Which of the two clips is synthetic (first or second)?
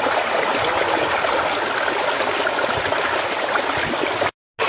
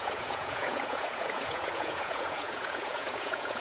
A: second